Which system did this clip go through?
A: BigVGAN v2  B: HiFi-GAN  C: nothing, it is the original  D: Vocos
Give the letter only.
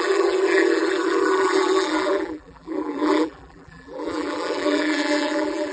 A